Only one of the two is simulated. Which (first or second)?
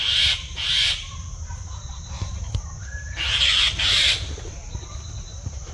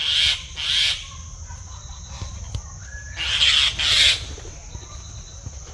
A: first